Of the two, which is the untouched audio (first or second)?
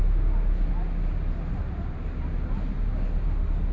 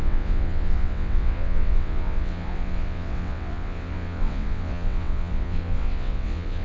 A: first